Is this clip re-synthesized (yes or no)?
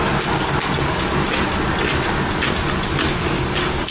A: no